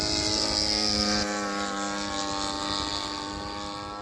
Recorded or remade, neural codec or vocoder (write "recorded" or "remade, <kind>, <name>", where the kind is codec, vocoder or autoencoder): recorded